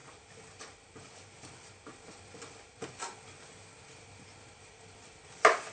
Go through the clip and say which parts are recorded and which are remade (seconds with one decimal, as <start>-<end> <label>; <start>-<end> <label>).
0.0-5.7 recorded